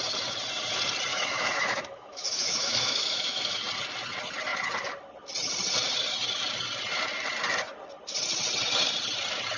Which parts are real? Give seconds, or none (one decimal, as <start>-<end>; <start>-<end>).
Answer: 0.0-1.1; 3.6-9.6